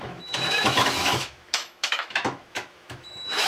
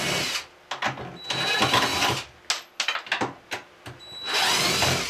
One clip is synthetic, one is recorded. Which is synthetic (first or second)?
first